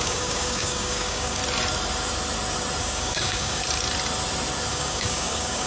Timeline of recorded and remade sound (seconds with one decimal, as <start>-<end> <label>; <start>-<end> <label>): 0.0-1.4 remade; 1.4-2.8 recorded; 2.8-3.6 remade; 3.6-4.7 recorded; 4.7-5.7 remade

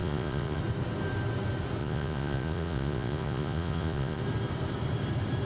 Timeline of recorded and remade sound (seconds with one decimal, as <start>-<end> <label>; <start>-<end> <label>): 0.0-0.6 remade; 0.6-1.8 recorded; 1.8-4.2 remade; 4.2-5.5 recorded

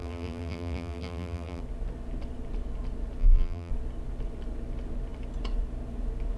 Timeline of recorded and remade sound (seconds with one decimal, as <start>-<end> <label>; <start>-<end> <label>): 0.0-1.6 remade; 1.6-3.2 recorded; 3.2-3.7 remade; 3.7-6.4 recorded